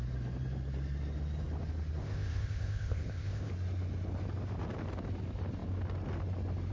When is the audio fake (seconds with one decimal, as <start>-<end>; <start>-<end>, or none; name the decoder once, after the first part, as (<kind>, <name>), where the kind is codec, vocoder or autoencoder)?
2.0-3.5 (codec, ZipCodec)